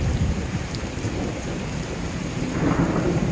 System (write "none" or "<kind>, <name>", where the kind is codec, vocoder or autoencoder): vocoder, BigVGAN v2